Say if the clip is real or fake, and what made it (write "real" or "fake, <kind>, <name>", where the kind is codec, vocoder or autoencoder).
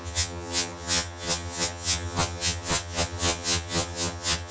fake, vocoder, HiFi-GAN